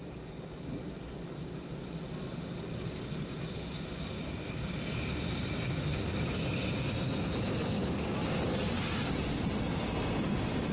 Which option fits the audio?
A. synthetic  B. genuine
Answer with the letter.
B